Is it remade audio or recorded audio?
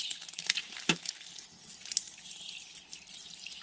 remade